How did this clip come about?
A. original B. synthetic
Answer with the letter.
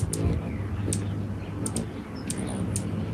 A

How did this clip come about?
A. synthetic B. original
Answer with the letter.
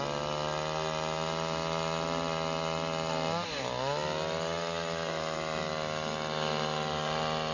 B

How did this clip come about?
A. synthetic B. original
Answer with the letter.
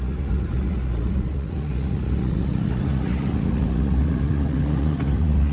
A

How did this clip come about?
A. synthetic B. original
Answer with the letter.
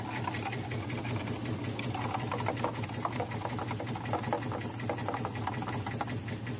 B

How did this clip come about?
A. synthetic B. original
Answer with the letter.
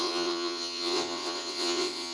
A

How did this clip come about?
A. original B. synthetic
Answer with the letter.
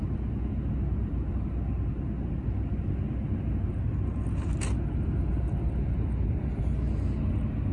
A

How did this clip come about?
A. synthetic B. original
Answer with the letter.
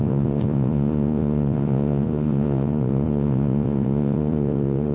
A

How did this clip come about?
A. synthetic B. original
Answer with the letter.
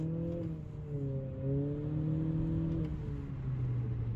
B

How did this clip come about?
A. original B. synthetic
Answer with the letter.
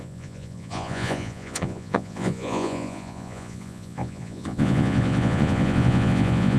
B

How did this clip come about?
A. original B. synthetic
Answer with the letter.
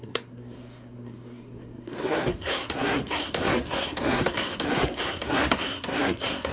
B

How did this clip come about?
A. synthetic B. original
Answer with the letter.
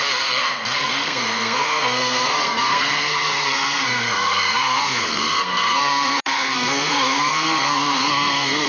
A